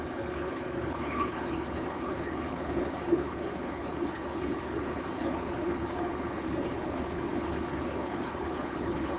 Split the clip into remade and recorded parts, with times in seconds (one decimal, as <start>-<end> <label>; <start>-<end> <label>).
0.0-9.2 remade